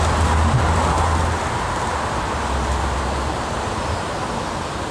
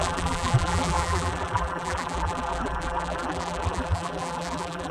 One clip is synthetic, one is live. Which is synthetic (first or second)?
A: second